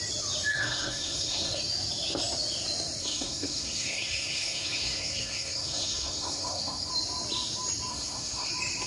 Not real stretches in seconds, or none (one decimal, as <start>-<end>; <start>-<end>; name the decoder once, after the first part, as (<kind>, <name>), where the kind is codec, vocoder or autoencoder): 0.5-1.6 (codec, SNAC); 3.0-6.9; 7.9-8.5